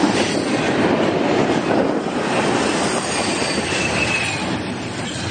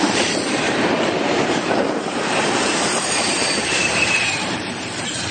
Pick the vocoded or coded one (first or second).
second